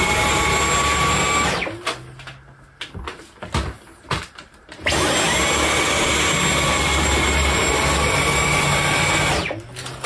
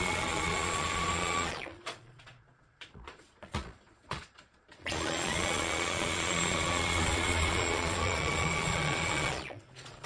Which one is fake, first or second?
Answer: second